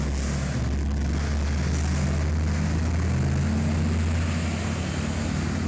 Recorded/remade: recorded